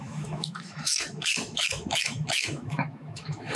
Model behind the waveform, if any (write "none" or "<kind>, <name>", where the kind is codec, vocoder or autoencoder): autoencoder, DAC-VAE